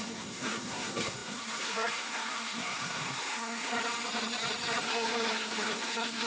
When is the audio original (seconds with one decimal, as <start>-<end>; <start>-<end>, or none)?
3.7-4.8